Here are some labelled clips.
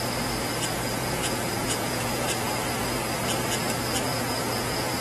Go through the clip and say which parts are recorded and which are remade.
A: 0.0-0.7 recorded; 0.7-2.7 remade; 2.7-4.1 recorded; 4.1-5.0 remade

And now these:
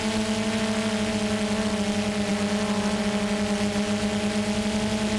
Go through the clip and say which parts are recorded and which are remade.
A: 0.0-5.2 recorded

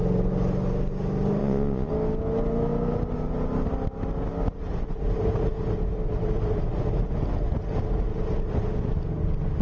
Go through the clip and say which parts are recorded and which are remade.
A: 0.0-1.4 recorded; 1.4-1.9 remade; 1.9-9.6 recorded

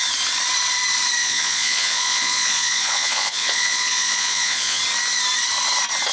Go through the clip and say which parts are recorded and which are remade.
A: 0.0-1.2 recorded; 1.2-4.8 remade; 4.8-6.1 recorded

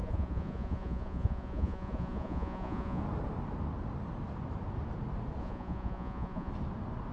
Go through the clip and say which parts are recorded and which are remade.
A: 0.0-3.0 remade; 3.0-5.4 recorded; 5.4-6.5 remade; 6.5-7.1 recorded

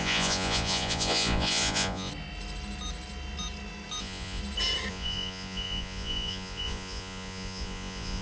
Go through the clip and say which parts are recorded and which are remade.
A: 0.0-2.1 remade; 2.1-4.0 recorded; 4.0-4.4 remade; 4.4-4.9 recorded; 4.9-8.2 remade

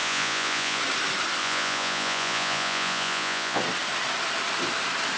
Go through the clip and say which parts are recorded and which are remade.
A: 0.0-0.8 remade; 0.8-1.4 recorded; 1.4-3.6 remade; 3.6-5.2 recorded

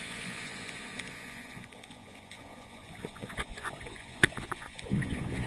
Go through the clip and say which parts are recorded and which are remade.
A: 0.0-5.5 remade